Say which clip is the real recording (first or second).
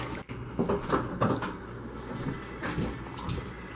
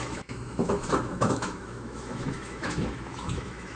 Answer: first